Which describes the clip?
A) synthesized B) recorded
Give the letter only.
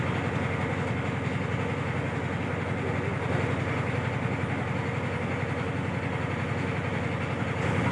B